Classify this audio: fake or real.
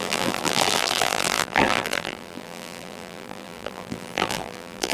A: fake